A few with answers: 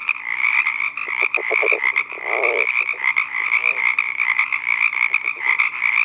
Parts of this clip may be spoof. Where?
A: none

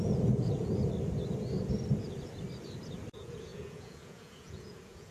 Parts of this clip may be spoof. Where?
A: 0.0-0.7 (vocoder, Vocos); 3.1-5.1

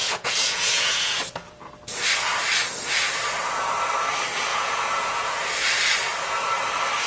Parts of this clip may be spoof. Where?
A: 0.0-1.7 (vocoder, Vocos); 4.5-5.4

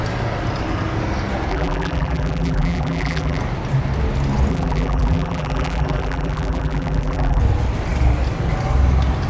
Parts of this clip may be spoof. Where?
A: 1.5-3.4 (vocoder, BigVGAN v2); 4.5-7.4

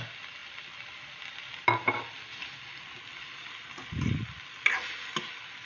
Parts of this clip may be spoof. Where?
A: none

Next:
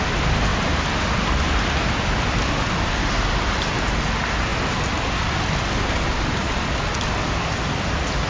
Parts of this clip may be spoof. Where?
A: none